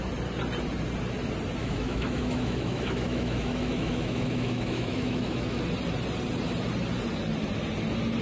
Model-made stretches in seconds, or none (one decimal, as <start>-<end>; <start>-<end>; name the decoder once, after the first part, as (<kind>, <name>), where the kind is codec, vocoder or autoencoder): 1.6-5.6 (autoencoder, DAC-VAE)